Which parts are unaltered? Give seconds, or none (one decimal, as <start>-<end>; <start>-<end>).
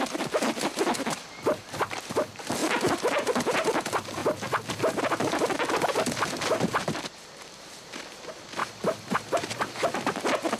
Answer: 0.0-2.6; 3.6-8.6; 10.2-10.6